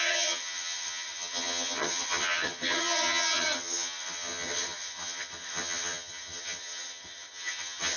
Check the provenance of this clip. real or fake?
fake